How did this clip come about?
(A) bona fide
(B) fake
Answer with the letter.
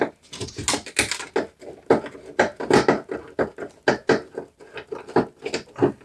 A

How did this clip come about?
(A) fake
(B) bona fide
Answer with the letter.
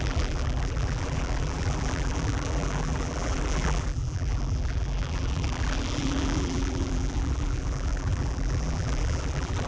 A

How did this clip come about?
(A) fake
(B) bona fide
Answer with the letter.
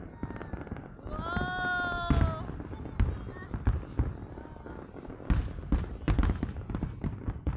B